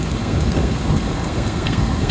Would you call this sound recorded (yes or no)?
no